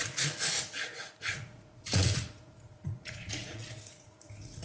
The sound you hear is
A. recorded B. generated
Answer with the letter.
B